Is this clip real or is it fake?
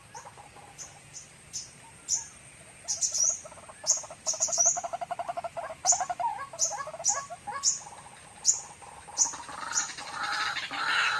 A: real